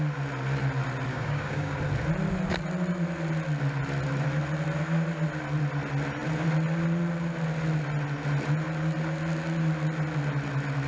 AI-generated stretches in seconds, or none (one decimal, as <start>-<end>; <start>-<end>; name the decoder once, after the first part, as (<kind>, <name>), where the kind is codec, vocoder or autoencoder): 1.1-1.8 (codec, DAC)